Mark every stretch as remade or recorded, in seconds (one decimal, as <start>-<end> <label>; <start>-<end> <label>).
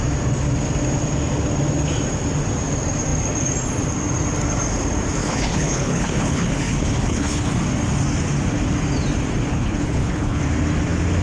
0.0-5.2 recorded; 5.2-7.5 remade; 7.5-9.5 recorded; 9.5-10.4 remade; 10.4-11.2 recorded